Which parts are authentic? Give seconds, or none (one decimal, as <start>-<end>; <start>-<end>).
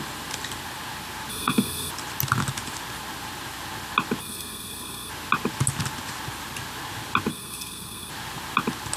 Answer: 0.0-1.3; 1.9-4.2; 5.1-7.3; 8.1-9.0